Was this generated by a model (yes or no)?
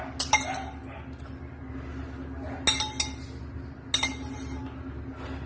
no